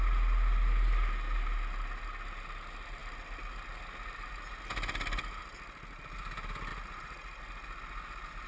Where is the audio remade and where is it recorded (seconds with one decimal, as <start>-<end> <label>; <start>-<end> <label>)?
0.0-8.5 recorded